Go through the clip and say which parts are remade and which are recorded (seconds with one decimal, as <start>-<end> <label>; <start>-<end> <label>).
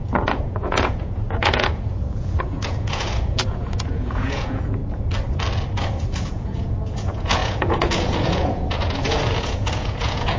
0.0-4.8 remade; 4.8-6.3 recorded; 6.3-10.4 remade